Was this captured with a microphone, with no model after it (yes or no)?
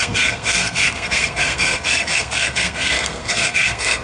no